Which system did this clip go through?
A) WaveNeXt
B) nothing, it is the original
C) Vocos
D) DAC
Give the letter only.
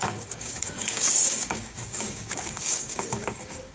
D